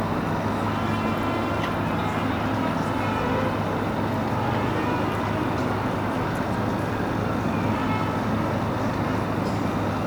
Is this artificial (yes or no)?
no